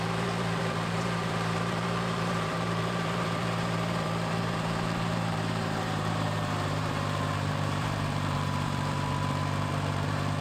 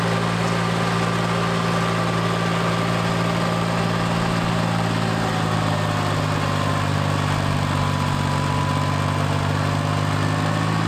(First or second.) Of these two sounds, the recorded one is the second